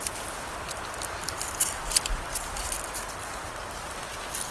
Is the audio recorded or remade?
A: recorded